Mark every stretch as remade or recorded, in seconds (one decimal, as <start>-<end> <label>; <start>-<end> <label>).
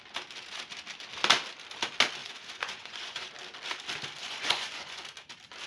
0.0-2.2 recorded; 2.2-3.3 remade; 3.3-4.2 recorded; 4.2-5.0 remade; 5.0-5.7 recorded